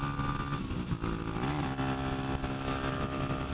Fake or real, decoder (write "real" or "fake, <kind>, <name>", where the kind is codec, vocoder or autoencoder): real